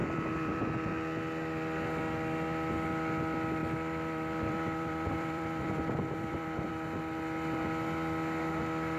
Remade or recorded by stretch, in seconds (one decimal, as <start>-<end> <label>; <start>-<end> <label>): 0.0-0.6 remade; 0.6-3.6 recorded; 3.6-6.7 remade; 6.7-9.0 recorded